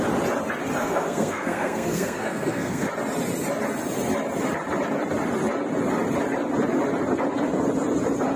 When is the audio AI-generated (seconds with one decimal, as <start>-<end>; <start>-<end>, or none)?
0.8-2.9